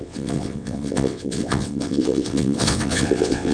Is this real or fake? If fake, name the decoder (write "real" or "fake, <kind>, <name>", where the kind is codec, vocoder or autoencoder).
fake, vocoder, WaveNeXt